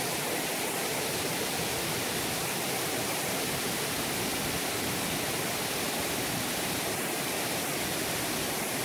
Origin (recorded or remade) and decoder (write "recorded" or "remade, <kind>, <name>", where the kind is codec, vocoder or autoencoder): recorded